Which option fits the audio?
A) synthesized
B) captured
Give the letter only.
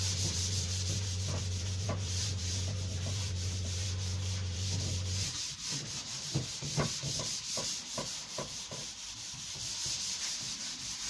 A